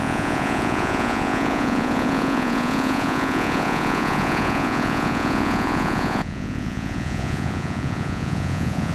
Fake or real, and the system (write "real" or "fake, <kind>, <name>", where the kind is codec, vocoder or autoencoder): fake, vocoder, Vocos